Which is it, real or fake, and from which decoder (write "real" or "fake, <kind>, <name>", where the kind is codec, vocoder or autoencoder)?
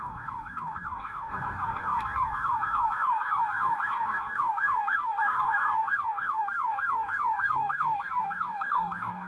fake, codec, DAC